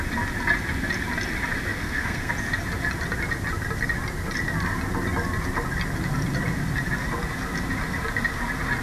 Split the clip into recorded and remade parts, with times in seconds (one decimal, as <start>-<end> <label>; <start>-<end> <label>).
0.0-1.7 recorded; 1.7-2.3 remade; 2.3-8.8 recorded